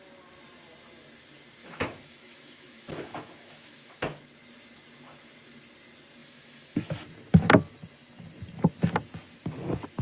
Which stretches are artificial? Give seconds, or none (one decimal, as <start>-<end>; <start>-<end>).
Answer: 1.6-4.2; 6.2-6.9